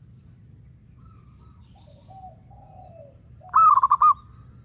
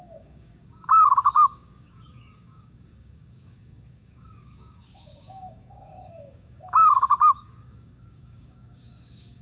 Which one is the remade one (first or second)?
second